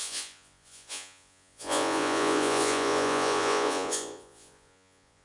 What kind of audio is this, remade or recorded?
remade